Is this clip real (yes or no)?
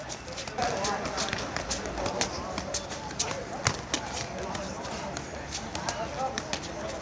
yes